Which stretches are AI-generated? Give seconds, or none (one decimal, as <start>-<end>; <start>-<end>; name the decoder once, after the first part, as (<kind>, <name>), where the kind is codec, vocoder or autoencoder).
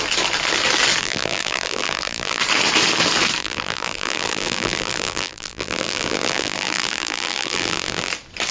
1.0-2.4 (vocoder, BigVGAN v2); 3.4-8.1